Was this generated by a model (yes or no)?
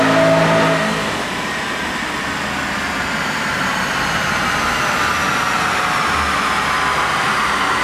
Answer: no